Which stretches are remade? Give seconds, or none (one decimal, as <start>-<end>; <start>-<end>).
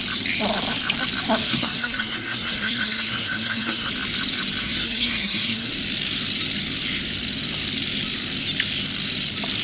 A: 1.4-3.9; 4.6-5.7